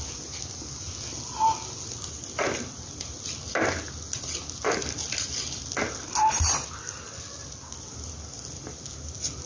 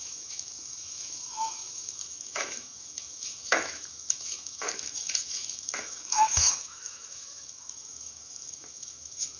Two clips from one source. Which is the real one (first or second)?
first